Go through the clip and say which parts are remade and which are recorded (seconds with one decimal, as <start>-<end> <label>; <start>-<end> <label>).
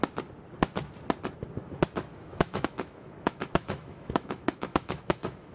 0.0-2.1 recorded; 2.1-5.5 remade